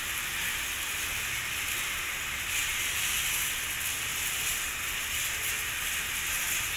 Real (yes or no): yes